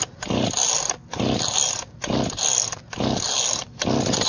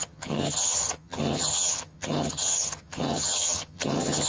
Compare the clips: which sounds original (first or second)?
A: first